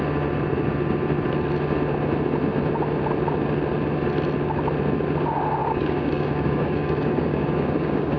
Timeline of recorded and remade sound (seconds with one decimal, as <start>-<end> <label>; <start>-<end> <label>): 0.0-5.6 recorded; 5.6-8.2 remade

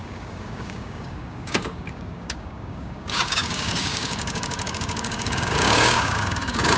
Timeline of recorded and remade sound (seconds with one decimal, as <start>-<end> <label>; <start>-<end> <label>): 0.0-6.8 remade

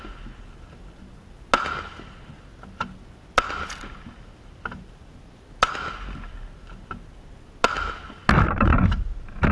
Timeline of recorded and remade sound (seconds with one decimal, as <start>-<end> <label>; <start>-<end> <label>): 0.0-9.5 recorded